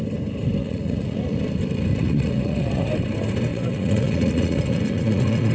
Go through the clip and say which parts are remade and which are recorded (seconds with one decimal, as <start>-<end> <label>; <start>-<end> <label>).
0.0-0.6 recorded; 0.6-1.4 remade; 1.4-1.9 recorded; 1.9-2.9 remade; 2.9-3.5 recorded; 3.5-5.5 remade